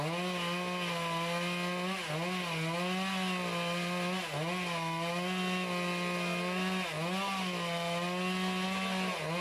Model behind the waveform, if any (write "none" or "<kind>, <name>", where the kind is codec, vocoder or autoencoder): none